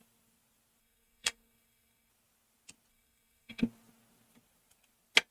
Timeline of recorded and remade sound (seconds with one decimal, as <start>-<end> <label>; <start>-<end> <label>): 0.0-0.8 recorded; 0.8-2.1 remade; 2.1-2.9 recorded; 2.9-3.6 remade; 3.6-5.3 recorded